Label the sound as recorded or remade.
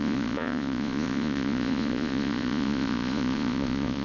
remade